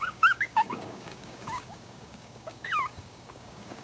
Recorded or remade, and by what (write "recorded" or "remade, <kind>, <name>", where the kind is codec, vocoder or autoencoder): remade, codec, DAC